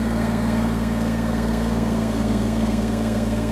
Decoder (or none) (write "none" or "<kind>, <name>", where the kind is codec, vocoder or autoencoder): codec, SNAC